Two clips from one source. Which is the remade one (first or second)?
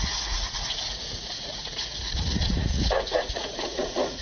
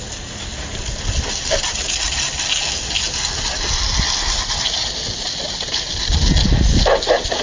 first